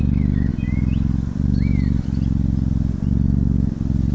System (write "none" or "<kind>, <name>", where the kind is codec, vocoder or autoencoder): none